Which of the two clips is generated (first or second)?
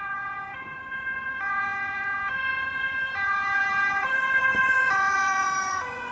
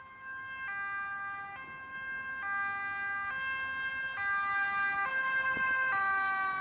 first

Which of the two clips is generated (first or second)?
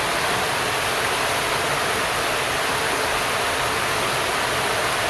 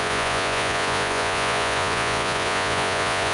second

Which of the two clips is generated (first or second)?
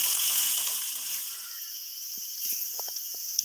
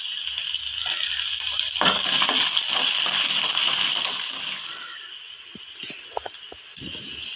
first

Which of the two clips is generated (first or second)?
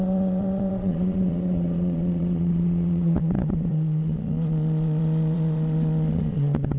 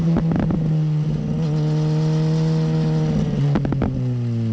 first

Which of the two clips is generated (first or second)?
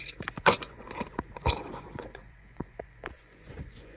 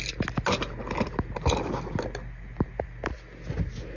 first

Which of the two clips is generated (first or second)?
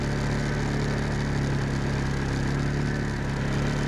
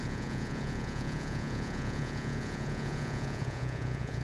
second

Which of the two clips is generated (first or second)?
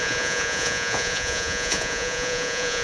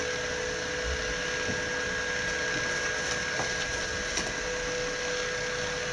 first